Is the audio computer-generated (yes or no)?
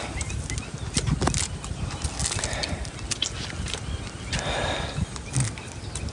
no